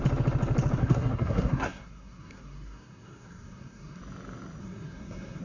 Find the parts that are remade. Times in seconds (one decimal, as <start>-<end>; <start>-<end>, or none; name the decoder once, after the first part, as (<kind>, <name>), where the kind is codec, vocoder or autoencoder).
0.8-4.0 (codec, SNAC); 4.6-5.4

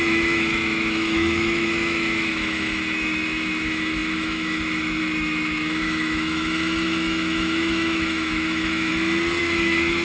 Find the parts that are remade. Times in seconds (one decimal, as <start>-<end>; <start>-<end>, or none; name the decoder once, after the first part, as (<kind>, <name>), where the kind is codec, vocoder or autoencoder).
0.0-8.9 (autoencoder, DAC-VAE); 9.4-10.0

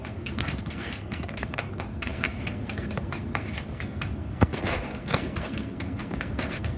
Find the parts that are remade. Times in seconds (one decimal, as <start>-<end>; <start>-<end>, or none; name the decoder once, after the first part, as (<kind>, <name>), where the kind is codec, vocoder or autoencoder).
0.0-6.8 (codec, SNAC)

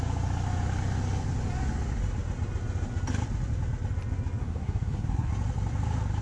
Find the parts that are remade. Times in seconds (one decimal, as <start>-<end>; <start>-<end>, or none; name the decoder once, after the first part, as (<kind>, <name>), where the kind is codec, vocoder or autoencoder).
4.4-5.3 (codec, SNAC)

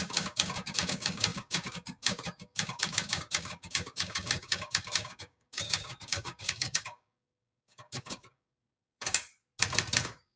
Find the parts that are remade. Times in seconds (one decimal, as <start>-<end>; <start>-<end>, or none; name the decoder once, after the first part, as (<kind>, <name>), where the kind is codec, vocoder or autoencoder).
0.0-9.3 (codec, DAC); 10.0-10.4

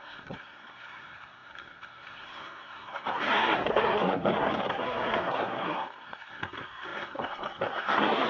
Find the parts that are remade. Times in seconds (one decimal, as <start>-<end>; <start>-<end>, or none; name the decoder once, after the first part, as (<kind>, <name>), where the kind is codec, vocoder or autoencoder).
0.0-8.3 (codec, SNAC)

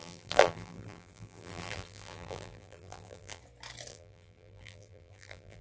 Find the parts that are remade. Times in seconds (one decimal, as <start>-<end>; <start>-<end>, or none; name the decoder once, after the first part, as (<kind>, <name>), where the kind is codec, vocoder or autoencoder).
0.0-3.4 (vocoder, BigVGAN v2); 3.9-5.6

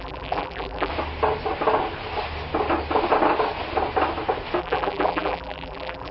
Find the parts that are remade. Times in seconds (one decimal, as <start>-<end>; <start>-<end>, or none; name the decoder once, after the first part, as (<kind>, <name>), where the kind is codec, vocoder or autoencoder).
0.0-0.9 (vocoder, BigVGAN v2); 4.6-6.1